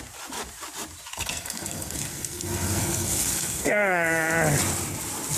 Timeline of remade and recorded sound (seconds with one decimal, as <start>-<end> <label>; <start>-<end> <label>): 0.0-1.1 recorded; 1.1-4.3 remade; 4.3-5.4 recorded